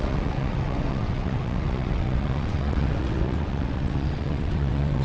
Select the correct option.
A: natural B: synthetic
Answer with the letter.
B